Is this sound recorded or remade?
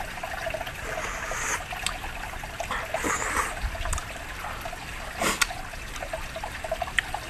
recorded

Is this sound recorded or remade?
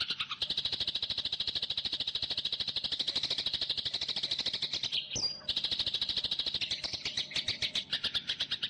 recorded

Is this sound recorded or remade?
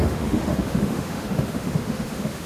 remade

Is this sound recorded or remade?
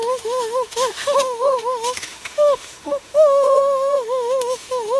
remade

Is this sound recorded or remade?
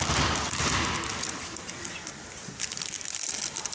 recorded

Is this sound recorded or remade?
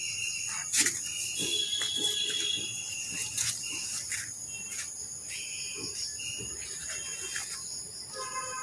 recorded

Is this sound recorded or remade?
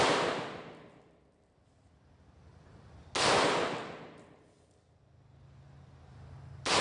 recorded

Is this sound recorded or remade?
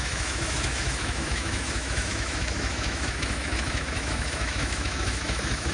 remade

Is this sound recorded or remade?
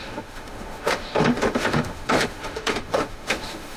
remade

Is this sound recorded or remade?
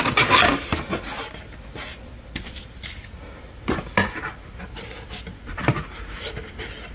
recorded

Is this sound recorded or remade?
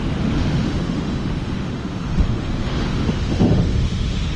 remade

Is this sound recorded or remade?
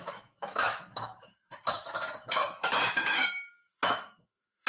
remade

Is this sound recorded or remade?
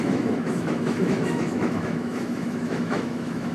remade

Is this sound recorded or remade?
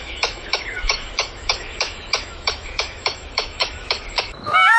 remade